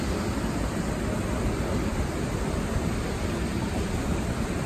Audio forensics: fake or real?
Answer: real